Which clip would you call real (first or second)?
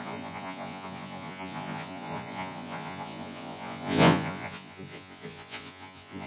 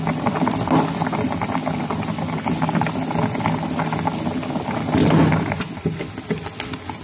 second